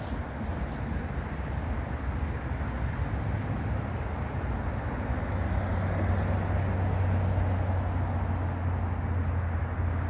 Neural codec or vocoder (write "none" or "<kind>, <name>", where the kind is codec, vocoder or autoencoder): none